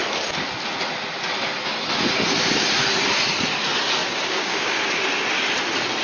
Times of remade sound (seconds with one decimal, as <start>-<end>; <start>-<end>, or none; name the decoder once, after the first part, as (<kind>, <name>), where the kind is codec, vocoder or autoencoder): 4.0-4.9 (codec, DAC)